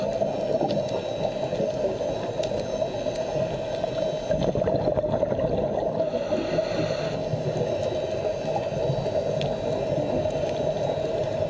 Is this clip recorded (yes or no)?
yes